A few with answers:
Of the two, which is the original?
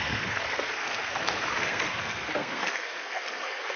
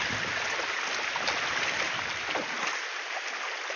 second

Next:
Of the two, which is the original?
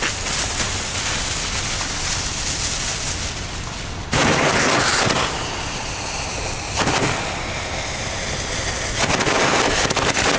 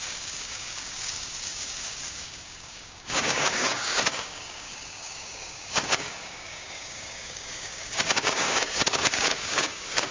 first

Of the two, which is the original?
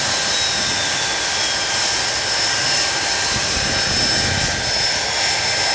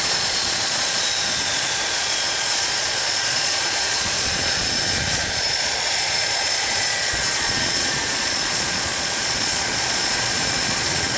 first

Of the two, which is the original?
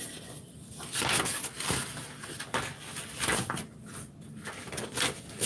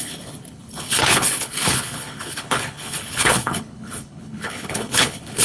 first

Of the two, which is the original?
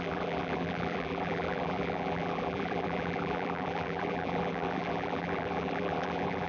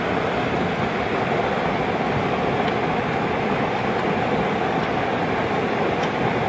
second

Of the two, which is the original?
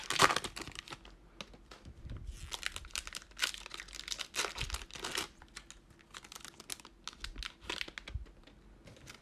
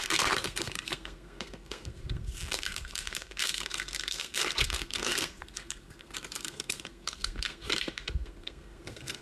first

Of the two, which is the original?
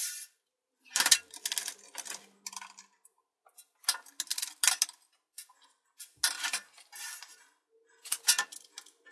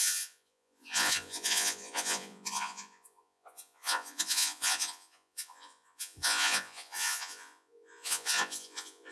first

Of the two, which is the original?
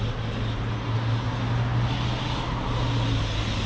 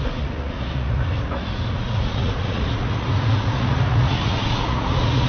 first